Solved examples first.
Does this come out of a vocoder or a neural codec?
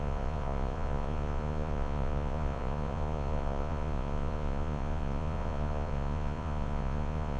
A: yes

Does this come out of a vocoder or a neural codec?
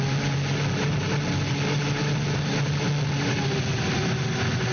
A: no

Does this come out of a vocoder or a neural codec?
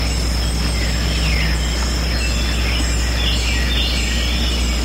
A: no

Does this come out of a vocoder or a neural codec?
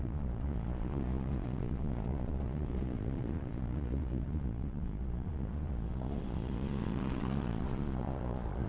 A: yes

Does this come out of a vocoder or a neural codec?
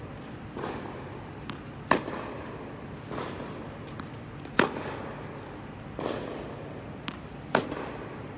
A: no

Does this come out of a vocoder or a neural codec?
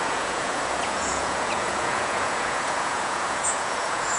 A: yes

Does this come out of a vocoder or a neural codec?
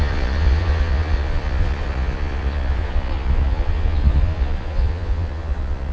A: yes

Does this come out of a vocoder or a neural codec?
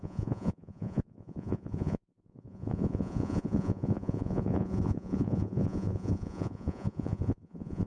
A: yes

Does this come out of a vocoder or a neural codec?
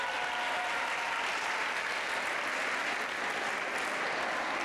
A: no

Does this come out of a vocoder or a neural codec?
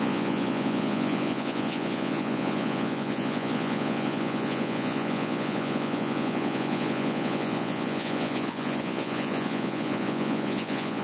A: yes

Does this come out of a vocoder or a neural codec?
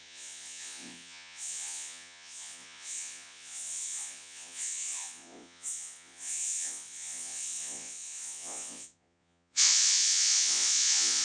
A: yes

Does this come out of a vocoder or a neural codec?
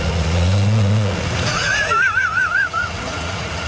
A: yes